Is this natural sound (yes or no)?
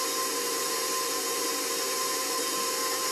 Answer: no